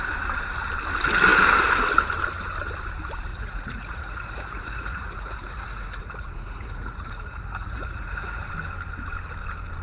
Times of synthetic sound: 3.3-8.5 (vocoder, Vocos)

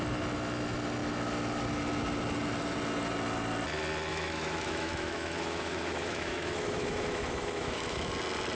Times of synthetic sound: 4.1-8.1 (autoencoder, DAC-VAE)

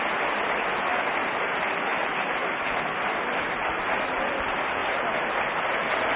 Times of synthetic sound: 1.9-3.3 (vocoder, BigVGAN v2); 4.8-5.4

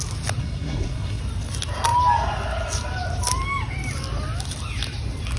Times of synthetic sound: 0.4-1.2 (codec, SNAC)

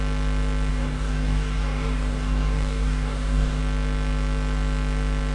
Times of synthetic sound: 0.7-3.6 (codec, DAC)

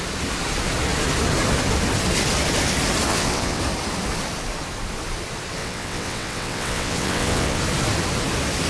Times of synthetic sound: 3.1-3.6 (vocoder, WaveNeXt); 5.6-7.6

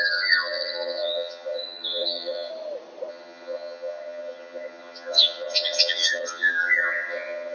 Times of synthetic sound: 0.0-2.5 (vocoder, HiFi-GAN); 3.1-7.5

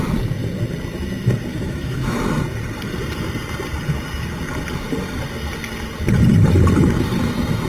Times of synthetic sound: 1.5-2.2 (autoencoder, DAC-VAE)